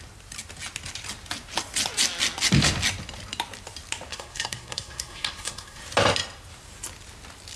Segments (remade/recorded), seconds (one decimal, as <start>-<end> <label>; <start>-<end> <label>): 0.0-4.1 recorded; 4.1-5.8 remade; 5.8-7.6 recorded